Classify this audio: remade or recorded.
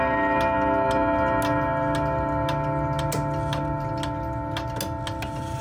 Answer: recorded